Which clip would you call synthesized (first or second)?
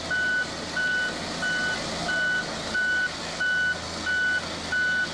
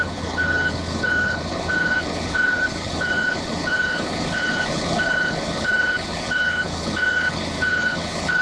second